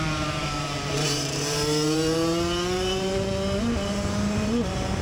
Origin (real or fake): fake